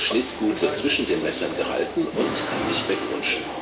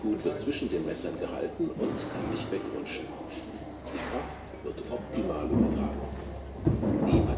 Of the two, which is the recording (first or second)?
second